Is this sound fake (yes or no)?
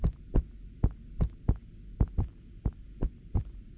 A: no